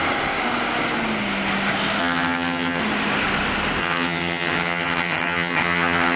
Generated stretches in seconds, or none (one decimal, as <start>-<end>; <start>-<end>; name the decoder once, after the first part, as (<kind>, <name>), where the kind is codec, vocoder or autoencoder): 2.0-2.8 (vocoder, HiFi-GAN); 3.8-6.2